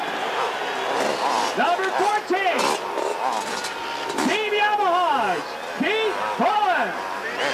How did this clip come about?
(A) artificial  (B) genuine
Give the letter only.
B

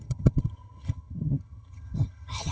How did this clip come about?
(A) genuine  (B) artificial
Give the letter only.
B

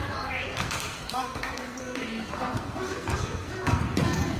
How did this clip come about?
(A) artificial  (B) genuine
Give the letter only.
A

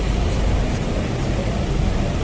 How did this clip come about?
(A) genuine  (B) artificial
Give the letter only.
B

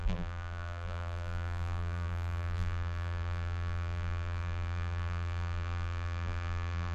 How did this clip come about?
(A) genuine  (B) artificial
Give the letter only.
B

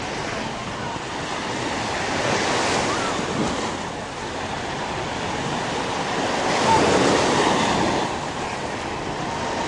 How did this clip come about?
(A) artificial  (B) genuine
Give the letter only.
B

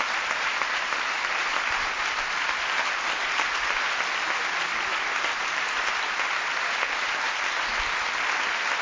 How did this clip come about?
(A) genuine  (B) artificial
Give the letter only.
A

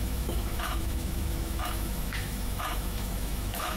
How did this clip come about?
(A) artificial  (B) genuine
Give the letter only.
A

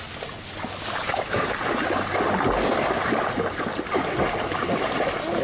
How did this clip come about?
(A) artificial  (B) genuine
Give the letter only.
B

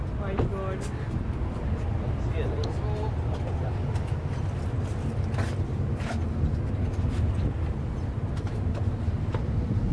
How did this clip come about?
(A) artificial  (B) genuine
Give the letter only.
B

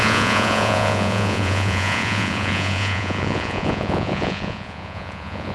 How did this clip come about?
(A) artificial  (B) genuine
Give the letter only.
A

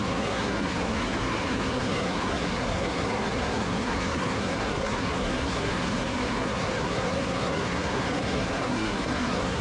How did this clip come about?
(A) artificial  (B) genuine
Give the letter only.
A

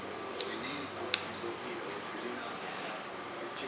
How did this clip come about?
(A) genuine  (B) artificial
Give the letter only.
A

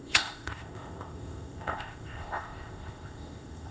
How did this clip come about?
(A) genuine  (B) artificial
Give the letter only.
B